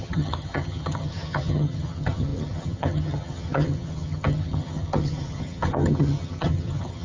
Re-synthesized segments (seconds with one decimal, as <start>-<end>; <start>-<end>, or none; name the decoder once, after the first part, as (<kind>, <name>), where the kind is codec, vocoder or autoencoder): 0.0-7.0 (vocoder, HiFi-GAN)